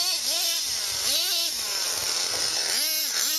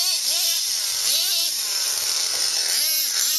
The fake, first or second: second